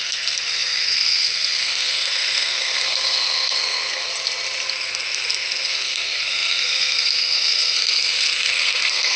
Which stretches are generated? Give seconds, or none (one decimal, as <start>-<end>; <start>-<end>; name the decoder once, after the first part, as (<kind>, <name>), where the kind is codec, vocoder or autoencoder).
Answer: 0.0-4.1 (codec, SNAC); 4.7-9.2